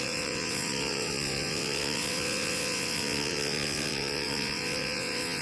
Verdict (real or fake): fake